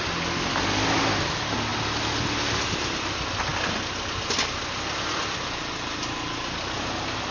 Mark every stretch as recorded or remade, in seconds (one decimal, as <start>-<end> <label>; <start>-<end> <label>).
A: 0.0-7.3 recorded